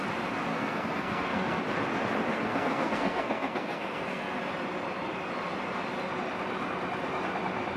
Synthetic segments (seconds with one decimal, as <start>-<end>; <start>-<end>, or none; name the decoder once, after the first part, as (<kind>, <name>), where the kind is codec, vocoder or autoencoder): 0.5-1.6 (codec, SNAC); 2.3-4.4